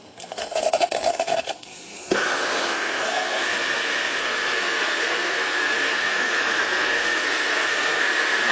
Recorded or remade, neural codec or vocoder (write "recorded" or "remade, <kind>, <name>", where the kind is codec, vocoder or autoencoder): remade, codec, SNAC